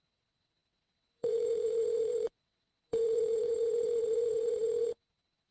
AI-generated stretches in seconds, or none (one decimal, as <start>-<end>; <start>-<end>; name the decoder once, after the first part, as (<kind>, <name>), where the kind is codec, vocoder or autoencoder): 0.0-5.5 (vocoder, WaveNeXt)